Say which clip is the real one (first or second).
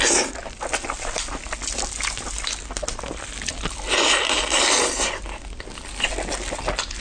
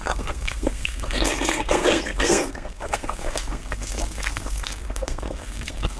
first